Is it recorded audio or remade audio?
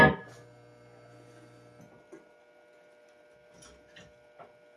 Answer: recorded